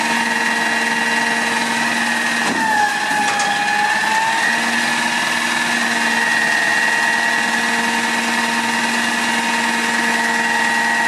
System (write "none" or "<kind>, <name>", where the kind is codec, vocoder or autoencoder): none